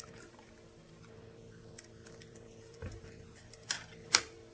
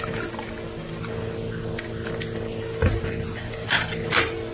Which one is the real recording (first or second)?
second